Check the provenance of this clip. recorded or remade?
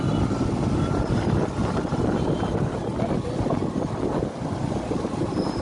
recorded